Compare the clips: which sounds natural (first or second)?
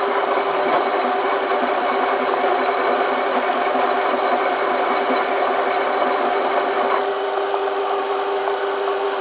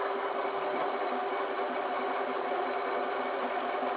second